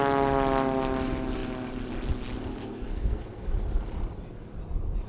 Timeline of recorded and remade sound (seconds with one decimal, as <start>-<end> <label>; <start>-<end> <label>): 0.0-2.5 recorded; 2.5-3.5 remade; 3.5-5.1 recorded